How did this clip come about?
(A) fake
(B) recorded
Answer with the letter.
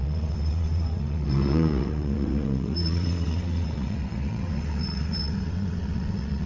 A